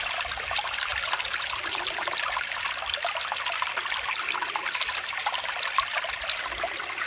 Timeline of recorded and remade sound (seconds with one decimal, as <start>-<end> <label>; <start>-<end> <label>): 0.0-7.1 recorded